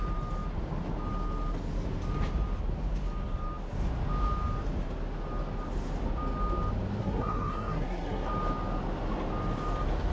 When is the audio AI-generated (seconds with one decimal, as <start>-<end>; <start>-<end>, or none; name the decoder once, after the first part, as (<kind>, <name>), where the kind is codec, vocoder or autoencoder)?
7.0-8.3 (codec, SNAC)